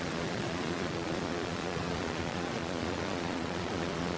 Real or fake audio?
fake